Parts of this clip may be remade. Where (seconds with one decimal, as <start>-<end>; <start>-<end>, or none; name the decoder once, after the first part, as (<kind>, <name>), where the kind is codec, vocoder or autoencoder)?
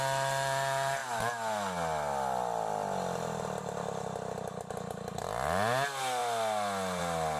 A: none